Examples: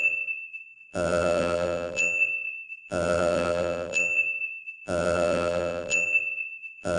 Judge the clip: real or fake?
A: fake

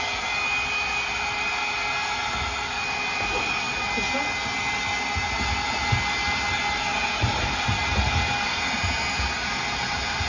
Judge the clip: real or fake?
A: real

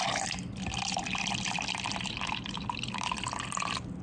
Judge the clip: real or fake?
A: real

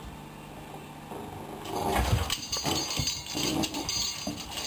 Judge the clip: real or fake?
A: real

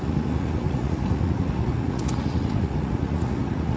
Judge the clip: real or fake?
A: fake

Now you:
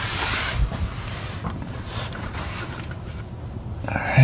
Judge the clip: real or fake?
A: fake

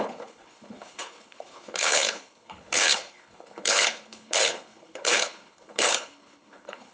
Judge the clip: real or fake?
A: fake